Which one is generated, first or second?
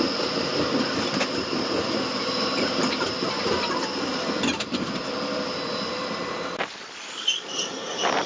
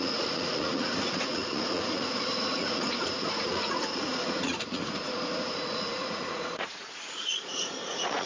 second